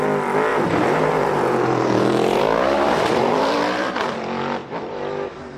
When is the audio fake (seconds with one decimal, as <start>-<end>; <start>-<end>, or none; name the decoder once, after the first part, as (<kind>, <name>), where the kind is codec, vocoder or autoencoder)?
0.5-3.9 (vocoder, BigVGAN v2)